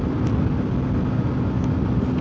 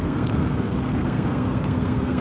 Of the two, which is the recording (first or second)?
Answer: first